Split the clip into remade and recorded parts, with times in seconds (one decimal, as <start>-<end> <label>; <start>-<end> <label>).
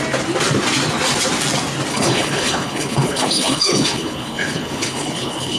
0.0-1.9 recorded; 1.9-5.6 remade